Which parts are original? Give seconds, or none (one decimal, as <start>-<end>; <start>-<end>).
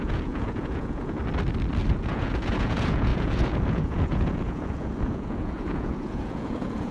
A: 1.2-1.9